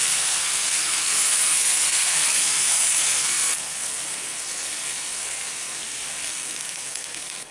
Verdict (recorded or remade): remade